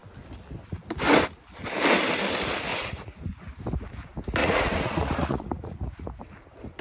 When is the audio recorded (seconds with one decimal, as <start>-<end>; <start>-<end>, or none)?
0.0-2.7; 3.2-4.4; 6.2-6.8